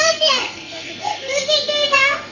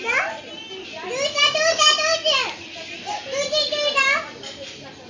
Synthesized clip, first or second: first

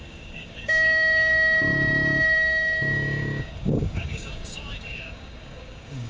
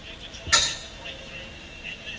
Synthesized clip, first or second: first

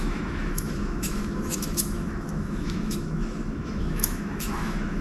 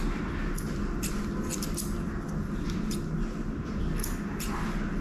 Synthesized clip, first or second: first